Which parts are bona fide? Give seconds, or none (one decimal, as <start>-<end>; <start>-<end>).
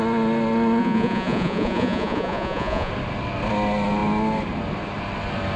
0.0-0.8; 2.9-5.6